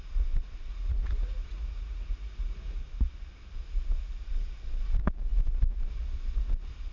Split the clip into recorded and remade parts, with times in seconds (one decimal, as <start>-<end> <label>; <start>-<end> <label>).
0.0-0.7 recorded; 0.7-2.8 remade; 2.8-6.9 recorded